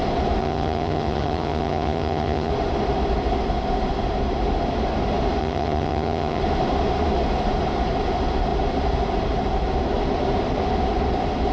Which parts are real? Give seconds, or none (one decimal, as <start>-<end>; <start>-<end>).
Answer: 0.0-0.4; 2.5-5.4; 6.4-11.5